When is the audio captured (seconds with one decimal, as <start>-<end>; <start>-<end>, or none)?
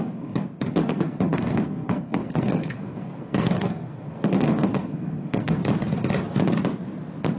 5.6-7.4